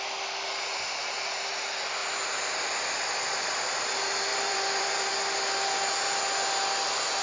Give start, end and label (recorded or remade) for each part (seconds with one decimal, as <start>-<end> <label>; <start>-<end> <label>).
0.0-4.3 recorded; 4.3-5.1 remade; 5.1-7.2 recorded